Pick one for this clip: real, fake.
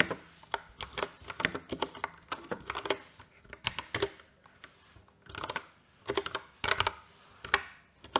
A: real